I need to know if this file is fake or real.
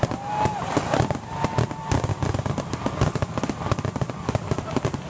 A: real